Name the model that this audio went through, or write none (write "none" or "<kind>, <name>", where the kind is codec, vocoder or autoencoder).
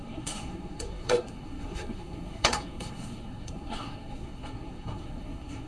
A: codec, SNAC